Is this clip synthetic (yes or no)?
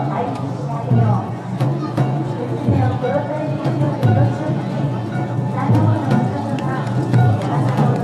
yes